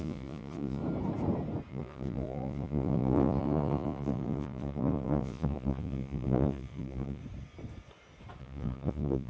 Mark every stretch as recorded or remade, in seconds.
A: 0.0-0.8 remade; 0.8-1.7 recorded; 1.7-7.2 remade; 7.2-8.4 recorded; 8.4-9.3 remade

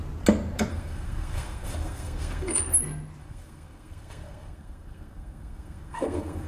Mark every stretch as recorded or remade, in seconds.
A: 0.0-0.7 recorded; 0.7-2.6 remade; 2.6-3.2 recorded; 3.2-6.5 remade

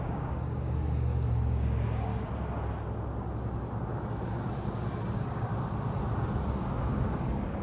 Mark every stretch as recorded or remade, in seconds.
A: 0.0-2.1 remade; 2.1-5.1 recorded; 5.1-5.5 remade; 5.5-6.5 recorded; 6.5-7.6 remade

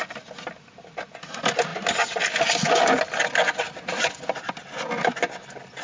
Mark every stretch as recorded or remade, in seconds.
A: 0.0-5.8 recorded

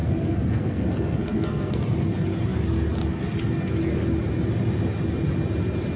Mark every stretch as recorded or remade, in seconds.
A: 0.0-1.8 remade; 1.8-6.0 recorded